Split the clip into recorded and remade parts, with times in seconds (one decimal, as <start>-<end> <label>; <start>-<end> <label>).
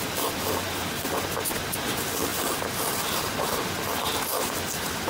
0.0-5.1 recorded